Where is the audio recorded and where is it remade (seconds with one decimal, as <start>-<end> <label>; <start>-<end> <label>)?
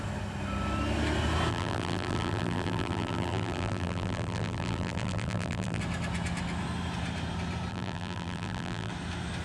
0.0-1.5 recorded; 1.5-5.8 remade; 5.8-7.7 recorded; 7.7-8.9 remade; 8.9-9.4 recorded